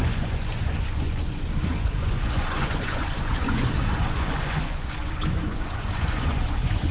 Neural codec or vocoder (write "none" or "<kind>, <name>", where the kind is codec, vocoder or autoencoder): vocoder, Vocos